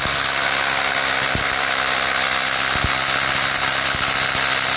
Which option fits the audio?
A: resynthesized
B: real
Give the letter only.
B